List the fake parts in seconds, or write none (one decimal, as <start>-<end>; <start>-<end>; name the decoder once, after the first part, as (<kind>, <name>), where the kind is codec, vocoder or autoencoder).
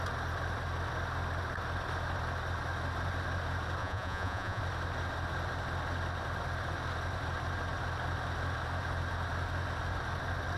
3.8-4.6 (vocoder, Vocos)